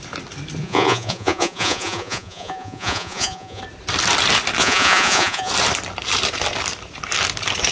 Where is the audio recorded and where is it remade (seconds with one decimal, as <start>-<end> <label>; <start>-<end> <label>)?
0.0-0.6 recorded; 0.6-3.6 remade; 3.6-4.6 recorded; 4.6-5.5 remade; 5.5-7.7 recorded